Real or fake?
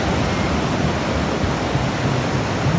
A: real